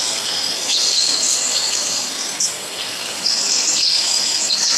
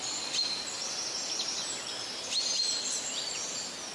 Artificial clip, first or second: first